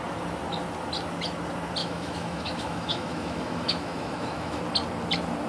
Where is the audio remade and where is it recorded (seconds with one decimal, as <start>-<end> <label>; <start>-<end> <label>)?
0.0-1.8 recorded; 1.8-4.6 remade; 4.6-5.5 recorded